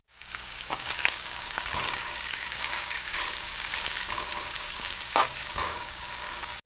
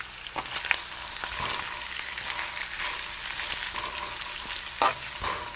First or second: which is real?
second